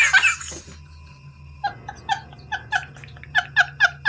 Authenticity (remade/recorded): recorded